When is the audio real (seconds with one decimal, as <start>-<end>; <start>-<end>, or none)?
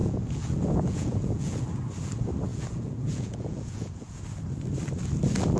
1.6-2.5; 4.2-5.6